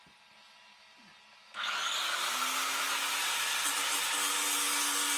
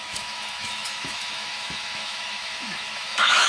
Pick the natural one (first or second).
first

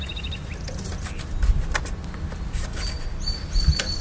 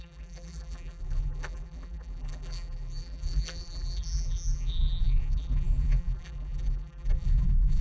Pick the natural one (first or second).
first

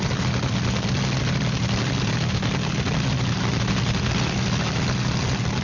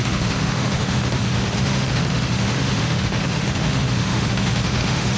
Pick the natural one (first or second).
first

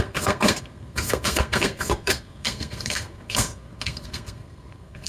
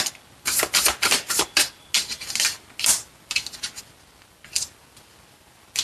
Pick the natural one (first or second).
second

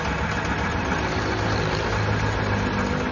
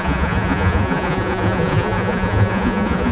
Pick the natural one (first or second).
first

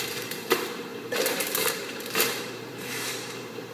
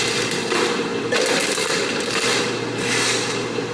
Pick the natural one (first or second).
second